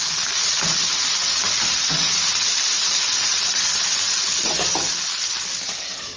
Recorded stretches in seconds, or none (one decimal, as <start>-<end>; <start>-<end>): 0.0-6.2